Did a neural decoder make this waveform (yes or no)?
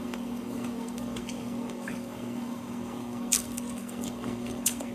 yes